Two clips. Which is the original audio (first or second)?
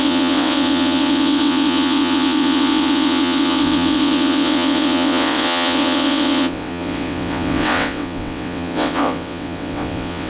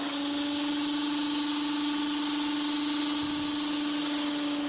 second